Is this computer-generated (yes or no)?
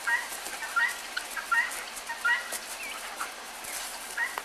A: no